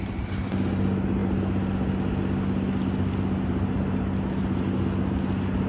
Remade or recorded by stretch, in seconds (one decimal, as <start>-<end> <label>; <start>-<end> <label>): 0.0-5.7 recorded